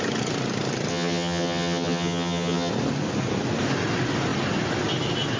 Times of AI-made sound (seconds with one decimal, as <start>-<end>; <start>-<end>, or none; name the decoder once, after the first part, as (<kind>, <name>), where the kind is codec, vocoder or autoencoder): 0.9-2.7 (vocoder, HiFi-GAN)

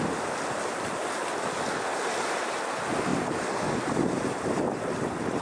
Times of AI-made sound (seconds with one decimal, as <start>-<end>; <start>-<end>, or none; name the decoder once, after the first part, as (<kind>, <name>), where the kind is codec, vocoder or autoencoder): none